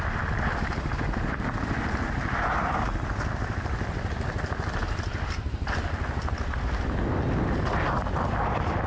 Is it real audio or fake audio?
real